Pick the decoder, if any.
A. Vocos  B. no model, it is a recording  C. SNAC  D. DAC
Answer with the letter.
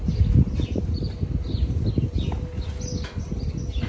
B